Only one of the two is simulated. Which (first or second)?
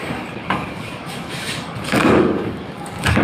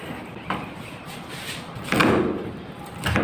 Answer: first